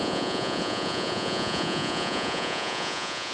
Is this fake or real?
fake